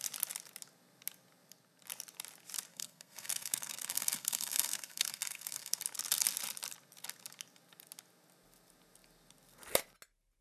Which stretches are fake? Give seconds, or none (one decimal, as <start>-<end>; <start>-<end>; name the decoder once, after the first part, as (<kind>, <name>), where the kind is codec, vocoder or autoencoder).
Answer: 2.7-5.8 (codec, SNAC)